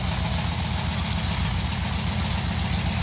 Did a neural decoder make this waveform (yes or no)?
no